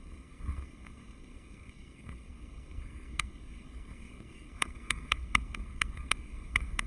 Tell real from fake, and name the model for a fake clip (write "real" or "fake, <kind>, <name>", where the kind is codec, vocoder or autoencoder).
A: fake, codec, SNAC